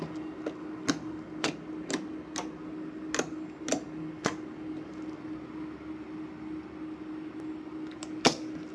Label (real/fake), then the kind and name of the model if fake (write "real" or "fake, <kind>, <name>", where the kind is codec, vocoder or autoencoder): real